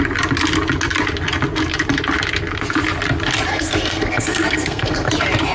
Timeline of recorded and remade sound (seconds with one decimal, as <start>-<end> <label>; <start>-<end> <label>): 0.0-3.5 recorded; 3.5-5.1 remade; 5.1-5.5 recorded